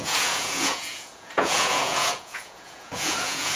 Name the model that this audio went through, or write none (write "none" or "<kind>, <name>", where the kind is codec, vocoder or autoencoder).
vocoder, Vocos